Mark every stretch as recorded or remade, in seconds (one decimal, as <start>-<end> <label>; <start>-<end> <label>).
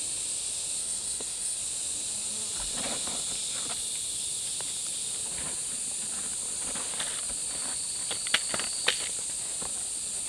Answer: 0.0-0.8 recorded; 0.8-1.6 remade; 1.6-10.3 recorded